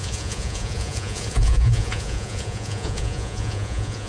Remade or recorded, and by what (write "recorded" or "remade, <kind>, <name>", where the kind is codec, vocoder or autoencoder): remade, vocoder, Vocos